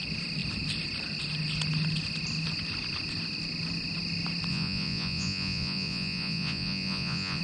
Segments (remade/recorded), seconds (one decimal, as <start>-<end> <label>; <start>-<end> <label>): 0.0-4.5 recorded; 4.5-7.4 remade